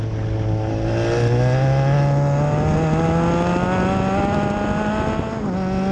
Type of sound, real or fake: real